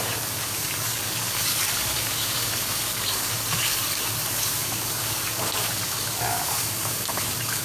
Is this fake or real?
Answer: fake